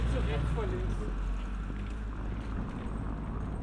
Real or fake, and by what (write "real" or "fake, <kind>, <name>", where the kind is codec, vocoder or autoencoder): real